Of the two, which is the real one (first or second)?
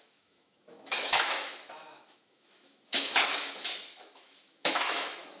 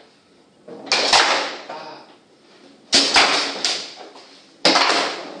second